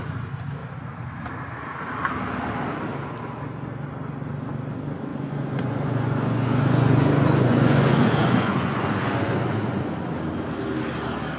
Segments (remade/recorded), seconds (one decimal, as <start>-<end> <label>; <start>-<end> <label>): 0.0-5.1 recorded; 5.1-9.9 remade; 9.9-11.4 recorded